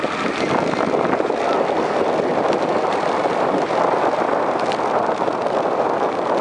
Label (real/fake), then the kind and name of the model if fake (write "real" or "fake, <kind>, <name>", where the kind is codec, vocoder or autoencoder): real